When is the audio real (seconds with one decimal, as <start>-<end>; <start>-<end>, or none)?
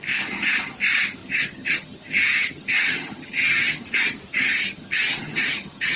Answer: 0.0-1.2; 3.8-4.3